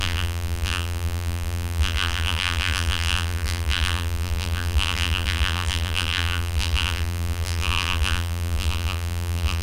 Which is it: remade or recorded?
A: remade